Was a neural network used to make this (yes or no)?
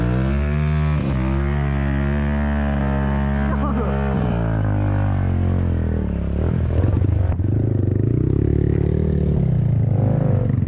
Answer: no